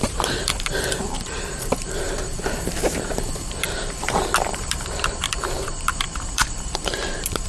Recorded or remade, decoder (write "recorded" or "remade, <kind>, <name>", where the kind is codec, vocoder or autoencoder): remade, vocoder, BigVGAN v2